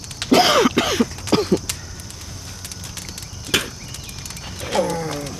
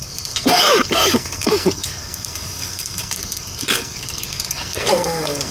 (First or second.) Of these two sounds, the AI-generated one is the second